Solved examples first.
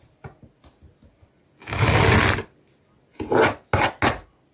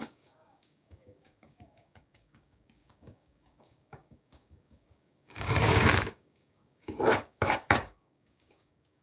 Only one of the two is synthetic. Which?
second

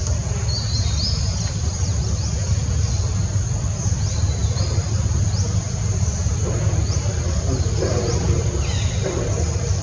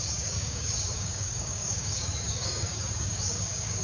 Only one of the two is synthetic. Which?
second